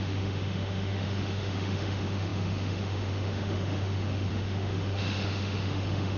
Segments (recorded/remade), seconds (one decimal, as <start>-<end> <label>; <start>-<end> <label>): 0.0-6.2 remade